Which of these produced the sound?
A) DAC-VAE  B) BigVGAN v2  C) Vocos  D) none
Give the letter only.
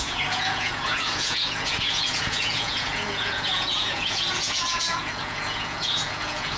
C